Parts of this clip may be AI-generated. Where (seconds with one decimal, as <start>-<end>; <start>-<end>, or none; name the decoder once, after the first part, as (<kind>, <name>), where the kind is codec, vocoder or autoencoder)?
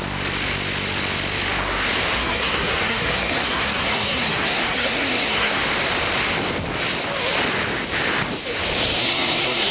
2.2-5.6 (codec, SNAC); 9.0-9.7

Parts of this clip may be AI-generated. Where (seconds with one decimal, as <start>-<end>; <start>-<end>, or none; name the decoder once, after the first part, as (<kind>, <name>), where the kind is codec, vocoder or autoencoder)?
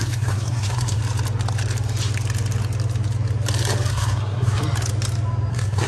0.0-1.0 (codec, SNAC); 3.9-4.6; 5.5-5.9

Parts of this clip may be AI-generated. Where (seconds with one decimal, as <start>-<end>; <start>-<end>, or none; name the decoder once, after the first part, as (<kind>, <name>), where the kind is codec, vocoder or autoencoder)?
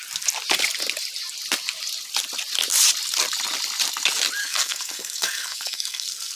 4.4-6.4 (codec, SNAC)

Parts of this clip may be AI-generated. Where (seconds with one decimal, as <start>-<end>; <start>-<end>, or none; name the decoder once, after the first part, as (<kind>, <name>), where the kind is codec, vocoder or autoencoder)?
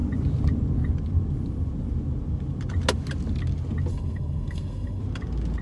3.9-5.0 (codec, SNAC)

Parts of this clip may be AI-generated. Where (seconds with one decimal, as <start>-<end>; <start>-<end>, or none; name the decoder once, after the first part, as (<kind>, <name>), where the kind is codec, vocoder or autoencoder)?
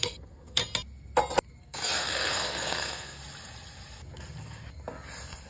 0.0-0.6 (codec, SNAC); 1.6-3.2